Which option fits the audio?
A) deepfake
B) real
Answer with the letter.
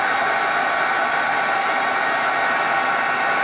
A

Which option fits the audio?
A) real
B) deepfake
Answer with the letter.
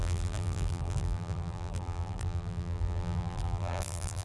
B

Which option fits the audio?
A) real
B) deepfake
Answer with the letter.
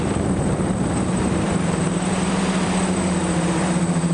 B